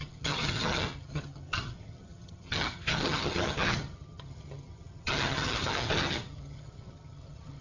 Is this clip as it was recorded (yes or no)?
no